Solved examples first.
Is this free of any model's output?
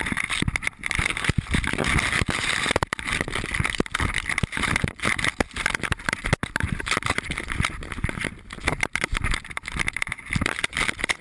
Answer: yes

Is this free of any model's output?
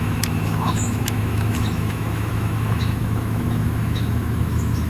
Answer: no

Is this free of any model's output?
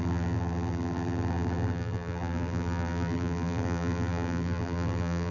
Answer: no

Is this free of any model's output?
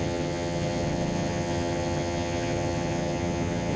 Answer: no